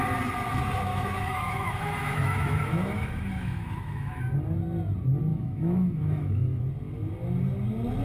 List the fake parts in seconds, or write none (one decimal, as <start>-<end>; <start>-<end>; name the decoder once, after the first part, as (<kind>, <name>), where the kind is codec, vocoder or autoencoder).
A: 0.9-4.2 (autoencoder, DAC-VAE); 5.3-6.6